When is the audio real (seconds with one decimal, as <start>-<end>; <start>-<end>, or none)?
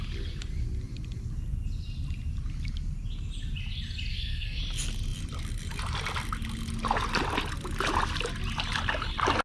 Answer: 0.0-4.1; 4.6-9.4